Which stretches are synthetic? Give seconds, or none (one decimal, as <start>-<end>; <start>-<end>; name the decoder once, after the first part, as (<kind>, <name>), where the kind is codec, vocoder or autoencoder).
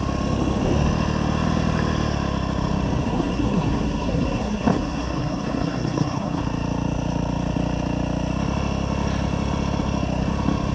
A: 3.0-6.4 (codec, SNAC)